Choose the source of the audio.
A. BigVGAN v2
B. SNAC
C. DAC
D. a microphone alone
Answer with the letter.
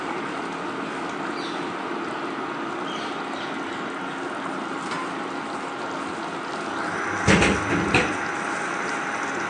D